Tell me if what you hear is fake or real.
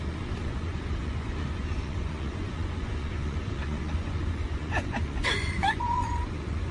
fake